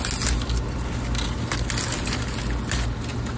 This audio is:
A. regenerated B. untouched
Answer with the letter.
B